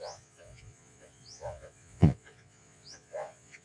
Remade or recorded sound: remade